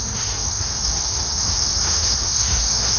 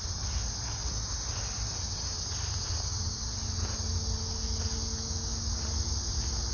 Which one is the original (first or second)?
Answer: second